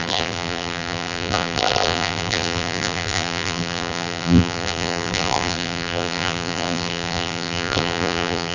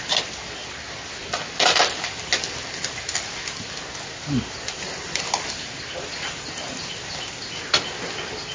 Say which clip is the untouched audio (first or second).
second